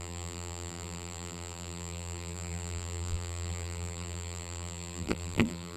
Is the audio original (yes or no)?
no